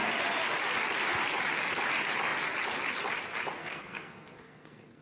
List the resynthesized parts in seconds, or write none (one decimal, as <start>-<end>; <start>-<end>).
3.6-5.0

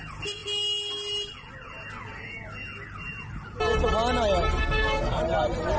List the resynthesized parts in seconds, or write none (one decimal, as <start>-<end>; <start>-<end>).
4.6-5.2

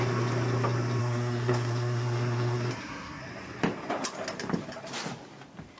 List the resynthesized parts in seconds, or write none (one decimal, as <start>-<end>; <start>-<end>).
1.0-3.2

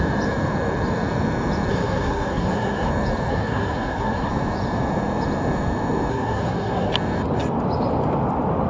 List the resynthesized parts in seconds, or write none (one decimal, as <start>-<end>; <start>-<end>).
1.7-2.9; 3.3-4.3; 6.1-6.9